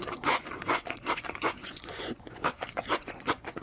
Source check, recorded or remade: remade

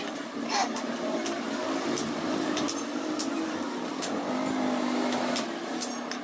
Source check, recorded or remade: recorded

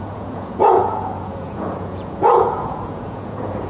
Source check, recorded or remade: remade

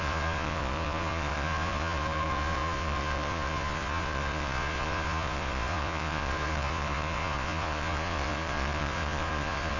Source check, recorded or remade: remade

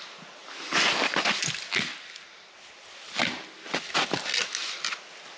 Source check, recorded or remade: recorded